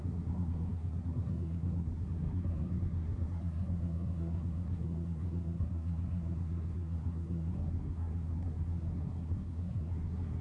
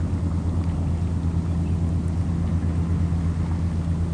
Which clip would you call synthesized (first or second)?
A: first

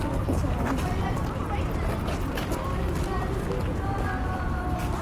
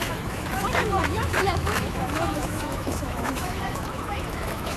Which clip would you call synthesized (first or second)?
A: second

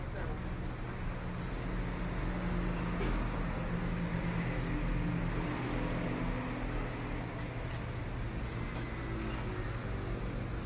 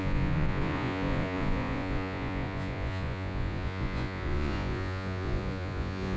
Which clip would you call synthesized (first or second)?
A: second